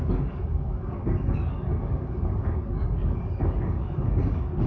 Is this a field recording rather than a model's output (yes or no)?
no